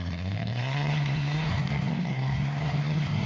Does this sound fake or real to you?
fake